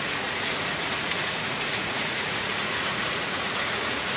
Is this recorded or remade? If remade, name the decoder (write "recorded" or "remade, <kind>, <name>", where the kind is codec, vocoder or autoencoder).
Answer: remade, vocoder, Vocos